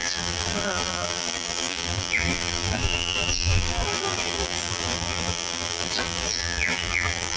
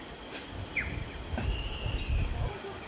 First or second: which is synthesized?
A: first